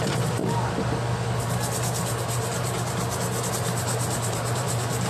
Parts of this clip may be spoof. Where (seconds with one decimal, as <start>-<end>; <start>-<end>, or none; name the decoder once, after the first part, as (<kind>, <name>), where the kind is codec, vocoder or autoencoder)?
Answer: 0.0-0.4 (vocoder, BigVGAN v2); 3.5-5.1